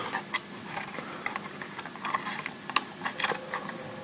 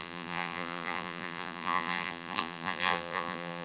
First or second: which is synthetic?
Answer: second